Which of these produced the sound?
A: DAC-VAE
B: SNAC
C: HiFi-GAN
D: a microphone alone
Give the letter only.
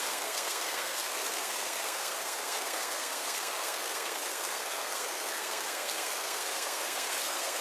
B